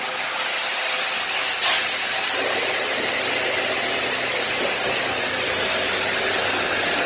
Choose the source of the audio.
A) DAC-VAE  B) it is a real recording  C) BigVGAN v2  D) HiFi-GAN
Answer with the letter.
B